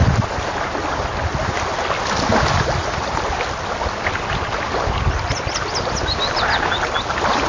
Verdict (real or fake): real